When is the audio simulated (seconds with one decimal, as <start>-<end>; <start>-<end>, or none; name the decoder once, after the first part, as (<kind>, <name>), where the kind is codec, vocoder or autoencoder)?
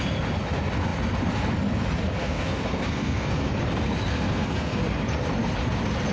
2.2-3.5 (codec, SNAC); 4.1-4.8